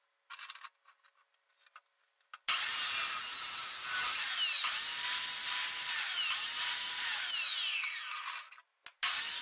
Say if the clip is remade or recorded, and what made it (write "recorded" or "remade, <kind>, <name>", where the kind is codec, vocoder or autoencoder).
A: recorded